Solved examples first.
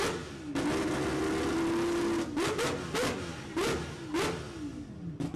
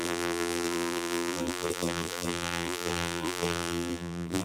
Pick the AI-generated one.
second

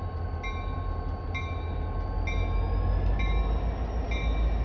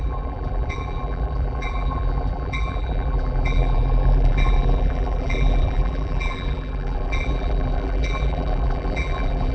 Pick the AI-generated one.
second